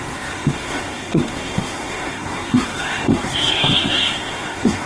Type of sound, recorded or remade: remade